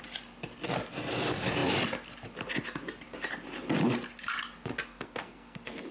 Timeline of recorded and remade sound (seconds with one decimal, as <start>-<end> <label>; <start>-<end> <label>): 0.0-4.9 recorded; 4.9-5.9 remade